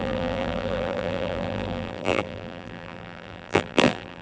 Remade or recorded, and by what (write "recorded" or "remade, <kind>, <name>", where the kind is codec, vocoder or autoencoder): remade, vocoder, BigVGAN v2